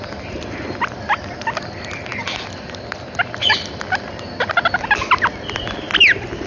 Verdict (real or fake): real